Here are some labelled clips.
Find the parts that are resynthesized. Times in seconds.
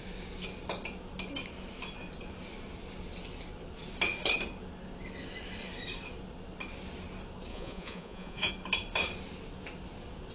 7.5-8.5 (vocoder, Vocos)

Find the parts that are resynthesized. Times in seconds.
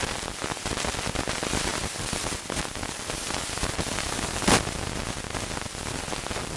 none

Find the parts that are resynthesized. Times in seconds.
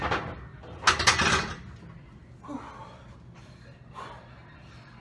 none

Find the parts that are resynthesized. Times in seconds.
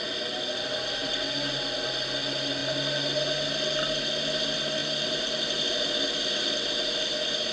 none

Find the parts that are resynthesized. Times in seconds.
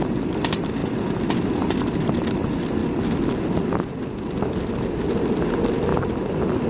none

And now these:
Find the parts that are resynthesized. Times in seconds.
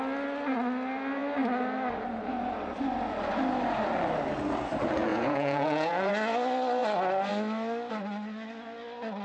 5.1-6.1 (vocoder, Vocos)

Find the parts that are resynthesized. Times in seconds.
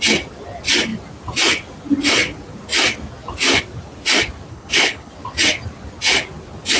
4.5-5.1 (codec, HILCodec)